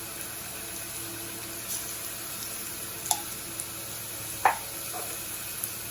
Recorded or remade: recorded